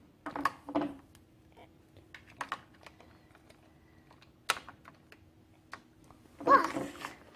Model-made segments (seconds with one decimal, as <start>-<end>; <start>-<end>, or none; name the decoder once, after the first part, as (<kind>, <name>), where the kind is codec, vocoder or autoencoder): none